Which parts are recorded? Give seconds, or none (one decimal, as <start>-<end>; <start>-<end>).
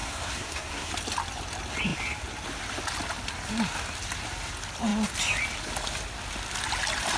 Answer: 0.9-7.2